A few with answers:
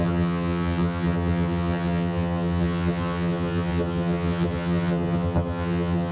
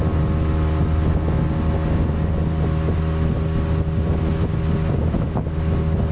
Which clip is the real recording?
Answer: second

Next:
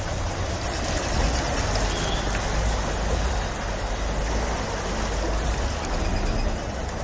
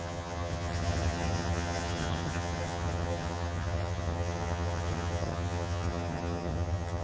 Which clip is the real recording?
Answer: first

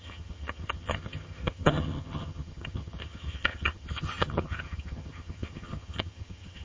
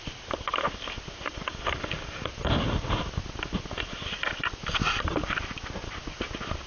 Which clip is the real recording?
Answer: second